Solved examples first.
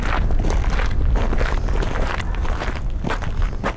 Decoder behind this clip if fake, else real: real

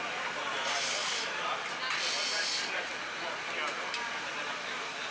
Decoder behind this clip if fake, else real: real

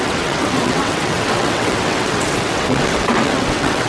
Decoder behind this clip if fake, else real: fake, vocoder, WaveNeXt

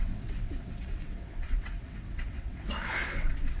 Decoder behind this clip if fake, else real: fake, vocoder, WaveNeXt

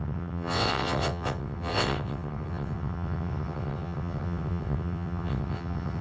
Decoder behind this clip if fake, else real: fake, vocoder, WaveNeXt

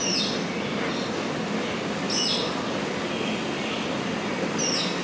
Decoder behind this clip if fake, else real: real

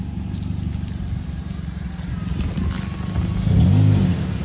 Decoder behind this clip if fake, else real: real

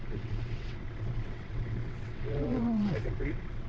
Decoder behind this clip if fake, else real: fake, vocoder, WaveNeXt